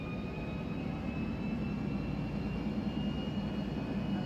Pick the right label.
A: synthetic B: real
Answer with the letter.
B